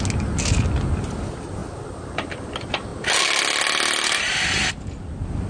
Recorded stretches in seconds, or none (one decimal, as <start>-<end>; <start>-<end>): 0.0-5.5